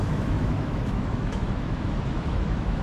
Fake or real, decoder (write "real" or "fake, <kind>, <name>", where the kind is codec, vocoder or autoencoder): fake, autoencoder, DAC-VAE